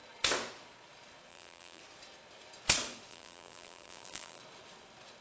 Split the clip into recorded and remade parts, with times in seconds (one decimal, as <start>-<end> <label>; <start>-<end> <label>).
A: 0.0-1.3 recorded; 1.3-1.8 remade; 1.8-3.1 recorded; 3.1-4.4 remade; 4.4-5.2 recorded

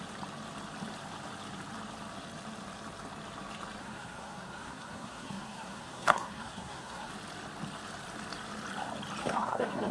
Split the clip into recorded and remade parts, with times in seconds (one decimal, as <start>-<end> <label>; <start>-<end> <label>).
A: 0.0-3.8 recorded; 3.8-7.1 remade; 7.1-9.2 recorded; 9.2-9.9 remade

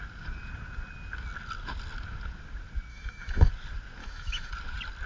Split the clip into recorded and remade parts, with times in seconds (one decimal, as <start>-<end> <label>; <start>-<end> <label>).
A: 0.0-2.9 recorded; 2.9-3.5 remade; 3.5-4.0 recorded; 4.0-4.5 remade; 4.5-5.1 recorded

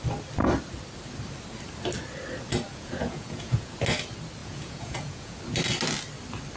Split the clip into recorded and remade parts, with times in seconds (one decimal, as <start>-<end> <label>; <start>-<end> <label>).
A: 0.0-2.7 recorded; 2.7-3.7 remade; 3.7-4.4 recorded; 4.4-5.4 remade; 5.4-6.6 recorded